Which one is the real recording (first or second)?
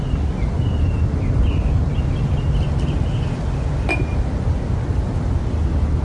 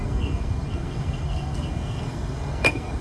first